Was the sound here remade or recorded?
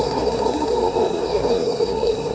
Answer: remade